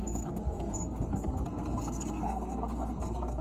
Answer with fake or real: fake